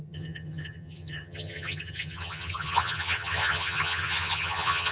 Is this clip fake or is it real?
fake